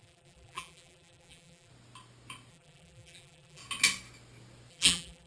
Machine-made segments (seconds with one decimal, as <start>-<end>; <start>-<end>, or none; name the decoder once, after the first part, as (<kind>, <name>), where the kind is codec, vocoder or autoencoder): 0.0-1.7 (vocoder, BigVGAN v2); 2.5-3.6; 4.7-5.3

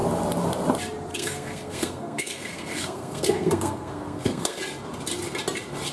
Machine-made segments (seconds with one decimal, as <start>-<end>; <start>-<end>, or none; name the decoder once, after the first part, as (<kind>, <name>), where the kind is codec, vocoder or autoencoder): 1.1-4.6 (codec, SNAC)